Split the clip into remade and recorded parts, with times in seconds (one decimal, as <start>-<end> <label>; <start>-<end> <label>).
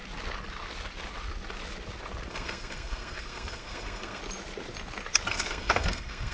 0.0-2.3 recorded; 2.3-4.2 remade; 4.2-5.3 recorded; 5.3-6.3 remade